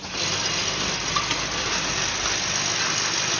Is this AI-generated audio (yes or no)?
no